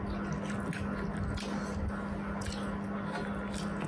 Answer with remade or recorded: recorded